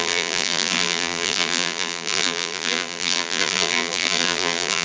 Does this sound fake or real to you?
fake